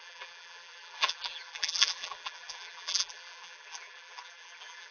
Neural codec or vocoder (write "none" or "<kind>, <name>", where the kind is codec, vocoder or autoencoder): vocoder, BigVGAN v2